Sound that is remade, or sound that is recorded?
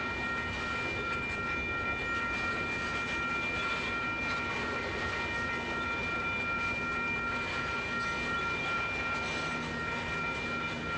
recorded